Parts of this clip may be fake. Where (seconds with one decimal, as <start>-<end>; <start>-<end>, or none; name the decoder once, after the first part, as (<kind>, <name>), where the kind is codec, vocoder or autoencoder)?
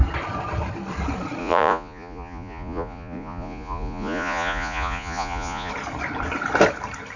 1.4-5.7 (vocoder, Vocos)